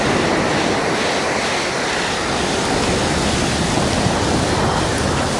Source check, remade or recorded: recorded